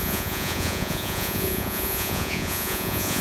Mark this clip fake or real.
fake